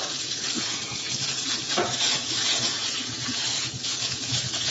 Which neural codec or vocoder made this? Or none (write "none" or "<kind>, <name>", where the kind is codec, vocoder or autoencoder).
vocoder, Vocos